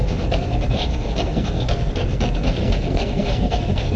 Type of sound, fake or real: fake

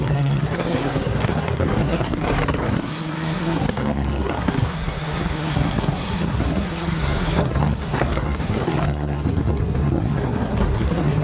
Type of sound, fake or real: fake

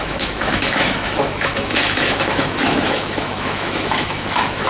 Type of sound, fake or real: fake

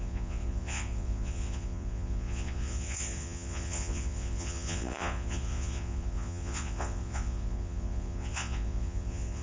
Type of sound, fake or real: fake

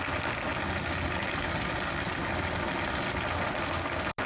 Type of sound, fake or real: real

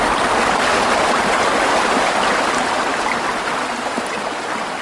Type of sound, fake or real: real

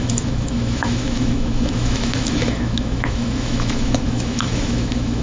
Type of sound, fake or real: fake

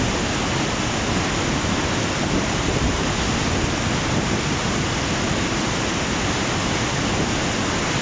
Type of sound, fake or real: real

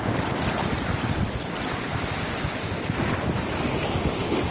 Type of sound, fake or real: real